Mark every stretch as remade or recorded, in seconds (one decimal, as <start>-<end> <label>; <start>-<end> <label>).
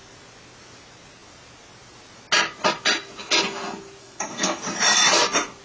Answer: 0.0-4.0 recorded; 4.0-4.6 remade; 4.6-5.6 recorded